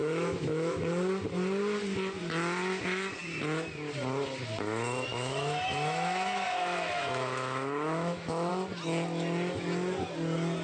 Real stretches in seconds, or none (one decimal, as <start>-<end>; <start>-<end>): 0.8-5.1; 8.5-10.6